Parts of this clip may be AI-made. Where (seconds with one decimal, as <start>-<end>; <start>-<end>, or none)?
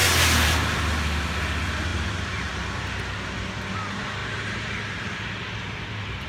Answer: 0.0-0.8; 1.9-2.5; 4.2-4.7